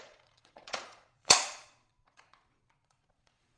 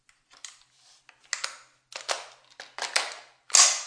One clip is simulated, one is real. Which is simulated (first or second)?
first